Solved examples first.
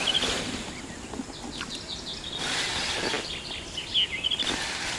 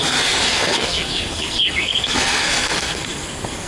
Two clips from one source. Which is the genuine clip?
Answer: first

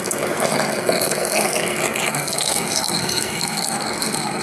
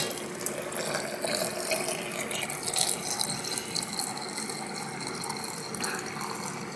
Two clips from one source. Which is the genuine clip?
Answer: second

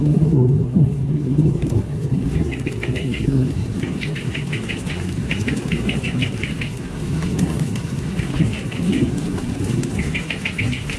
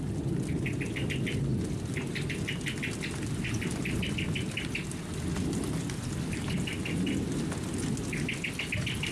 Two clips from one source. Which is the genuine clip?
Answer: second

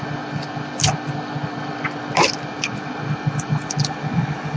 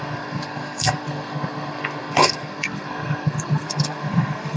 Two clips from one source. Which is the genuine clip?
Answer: first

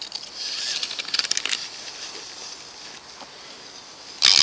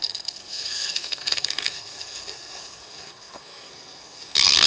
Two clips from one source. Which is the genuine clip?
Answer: first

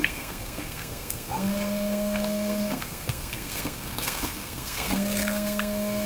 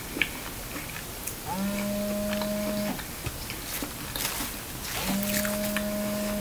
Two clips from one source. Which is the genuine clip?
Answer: second